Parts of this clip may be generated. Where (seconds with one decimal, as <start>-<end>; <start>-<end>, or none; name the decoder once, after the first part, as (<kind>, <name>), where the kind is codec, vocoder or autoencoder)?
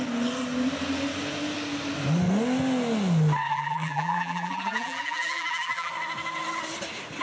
3.5-5.9 (vocoder, BigVGAN v2)